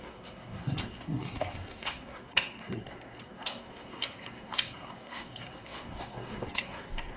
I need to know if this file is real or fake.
fake